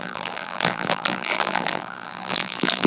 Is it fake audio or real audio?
fake